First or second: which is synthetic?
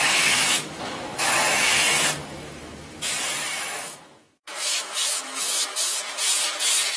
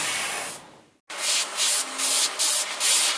first